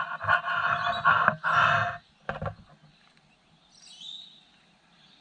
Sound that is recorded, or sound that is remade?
recorded